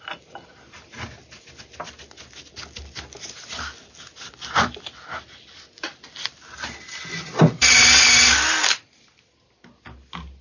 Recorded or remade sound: recorded